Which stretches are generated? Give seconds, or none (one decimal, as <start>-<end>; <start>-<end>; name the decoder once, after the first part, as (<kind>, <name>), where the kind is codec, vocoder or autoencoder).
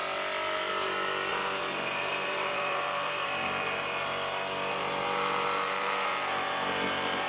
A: 1.3-4.1 (vocoder, BigVGAN v2); 4.7-7.3